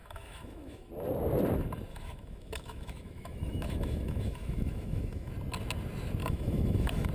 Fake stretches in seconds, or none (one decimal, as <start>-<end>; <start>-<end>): 0.0-0.9; 1.9-5.3; 6.2-7.1